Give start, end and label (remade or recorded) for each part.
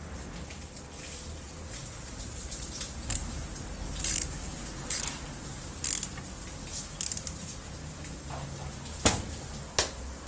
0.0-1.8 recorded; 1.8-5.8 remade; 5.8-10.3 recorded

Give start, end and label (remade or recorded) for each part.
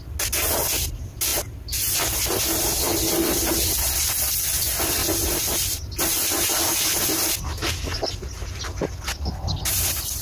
0.0-5.0 recorded; 5.0-7.0 remade; 7.0-10.2 recorded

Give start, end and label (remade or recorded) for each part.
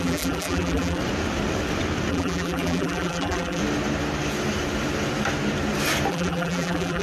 0.0-1.0 remade; 1.0-2.1 recorded; 2.1-3.6 remade; 3.6-6.1 recorded; 6.1-7.0 remade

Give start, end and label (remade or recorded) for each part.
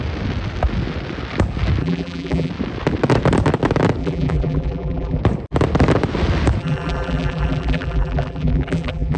0.0-1.8 recorded; 1.8-2.5 remade; 2.5-4.0 recorded; 4.0-5.2 remade; 5.2-6.6 recorded; 6.6-9.2 remade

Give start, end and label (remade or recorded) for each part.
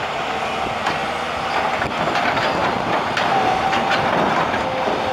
0.0-2.6 recorded; 2.6-3.9 remade; 3.9-5.1 recorded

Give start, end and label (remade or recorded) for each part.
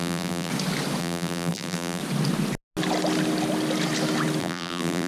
0.0-0.5 remade; 0.5-1.0 recorded; 1.0-2.0 remade; 2.0-4.4 recorded; 4.4-5.1 remade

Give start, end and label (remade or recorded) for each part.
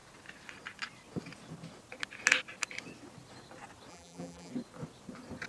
0.0-3.9 recorded; 3.9-4.5 remade; 4.5-5.5 recorded